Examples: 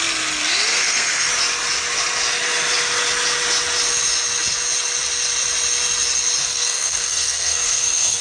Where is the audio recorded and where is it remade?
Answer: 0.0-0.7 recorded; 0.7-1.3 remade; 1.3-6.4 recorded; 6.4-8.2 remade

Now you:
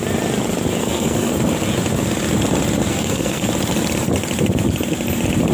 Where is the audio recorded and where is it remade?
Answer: 0.0-0.8 recorded; 0.8-1.3 remade; 1.3-2.9 recorded; 2.9-3.5 remade; 3.5-5.5 recorded